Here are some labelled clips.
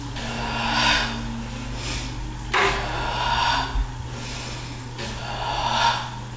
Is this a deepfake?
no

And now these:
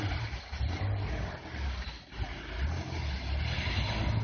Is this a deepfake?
no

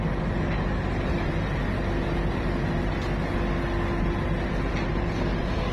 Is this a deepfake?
no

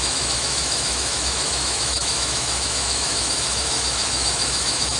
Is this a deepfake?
yes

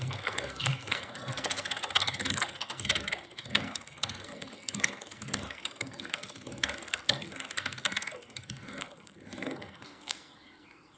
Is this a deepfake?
yes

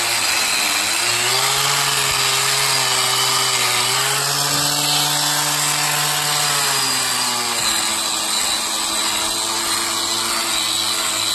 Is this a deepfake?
no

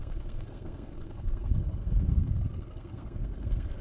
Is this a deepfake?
yes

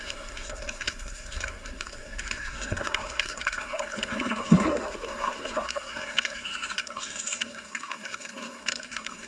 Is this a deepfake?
yes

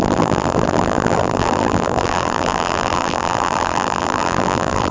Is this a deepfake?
yes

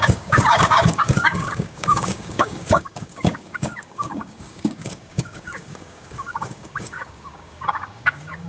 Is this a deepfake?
yes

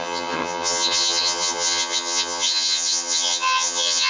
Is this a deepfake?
yes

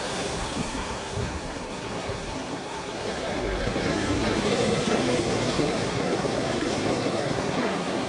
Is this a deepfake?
yes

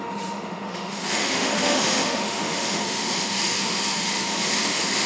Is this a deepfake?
yes